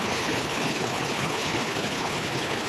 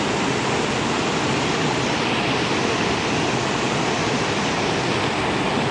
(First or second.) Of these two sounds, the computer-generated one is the first